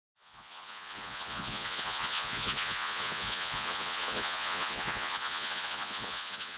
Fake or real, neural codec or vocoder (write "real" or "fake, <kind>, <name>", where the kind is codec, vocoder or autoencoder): fake, vocoder, Vocos